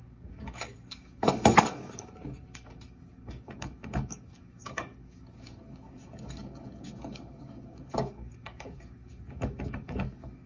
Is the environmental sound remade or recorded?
remade